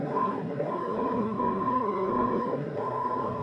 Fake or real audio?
fake